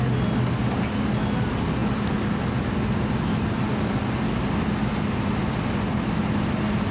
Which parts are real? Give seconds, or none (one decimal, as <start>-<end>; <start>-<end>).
0.0-6.9